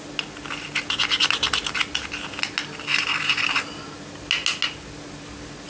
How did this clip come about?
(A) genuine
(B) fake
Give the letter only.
A